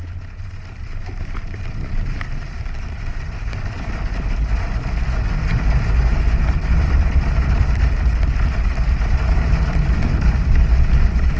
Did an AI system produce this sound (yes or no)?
no